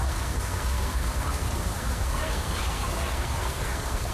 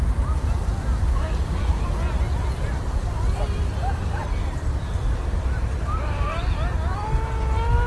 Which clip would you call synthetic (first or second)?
first